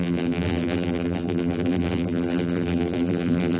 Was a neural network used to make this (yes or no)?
yes